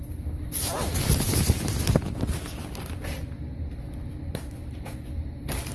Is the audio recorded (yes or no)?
yes